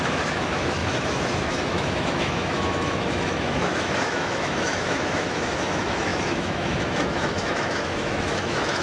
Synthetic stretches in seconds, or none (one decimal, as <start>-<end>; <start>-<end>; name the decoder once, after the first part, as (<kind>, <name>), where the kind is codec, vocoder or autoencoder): 0.0-8.8 (autoencoder, DAC-VAE)